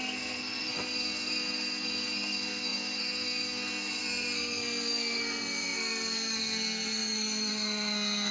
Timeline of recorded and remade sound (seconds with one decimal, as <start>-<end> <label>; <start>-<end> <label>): 0.0-8.3 remade